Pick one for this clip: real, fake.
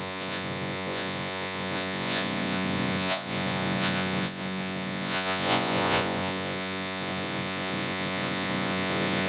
fake